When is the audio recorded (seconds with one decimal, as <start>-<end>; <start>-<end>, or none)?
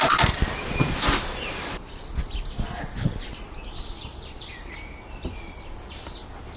0.7-6.6